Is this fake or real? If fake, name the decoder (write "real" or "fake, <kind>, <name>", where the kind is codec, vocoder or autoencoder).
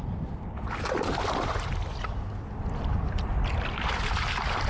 real